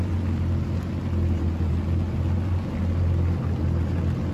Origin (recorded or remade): recorded